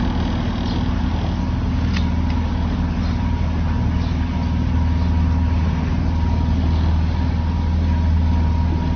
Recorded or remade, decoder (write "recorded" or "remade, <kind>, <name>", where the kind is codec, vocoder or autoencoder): recorded